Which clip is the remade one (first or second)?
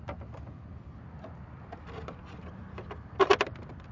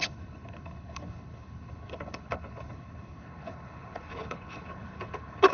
second